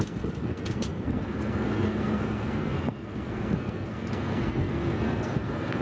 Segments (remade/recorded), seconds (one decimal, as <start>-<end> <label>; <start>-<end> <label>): 0.0-5.8 remade